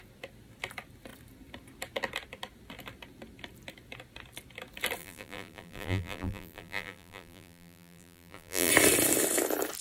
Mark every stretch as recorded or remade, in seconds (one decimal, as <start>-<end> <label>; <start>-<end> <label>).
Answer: 0.0-5.0 recorded; 5.0-8.7 remade; 8.7-9.8 recorded